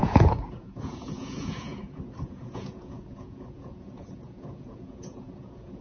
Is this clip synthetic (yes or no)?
yes